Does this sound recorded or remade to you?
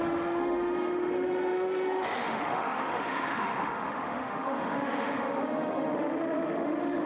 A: remade